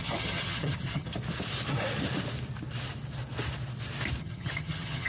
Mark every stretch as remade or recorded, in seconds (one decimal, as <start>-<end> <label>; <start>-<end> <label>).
0.0-1.1 remade; 1.1-4.2 recorded; 4.2-5.1 remade